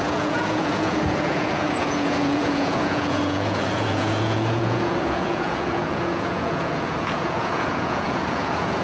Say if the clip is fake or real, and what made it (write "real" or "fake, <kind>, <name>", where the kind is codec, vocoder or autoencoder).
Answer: fake, vocoder, Vocos